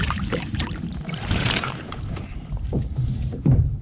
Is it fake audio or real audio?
fake